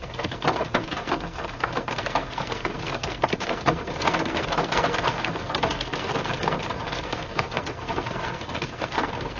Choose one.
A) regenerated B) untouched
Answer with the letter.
A